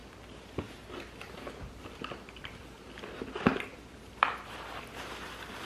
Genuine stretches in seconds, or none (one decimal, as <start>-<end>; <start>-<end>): 0.0-5.6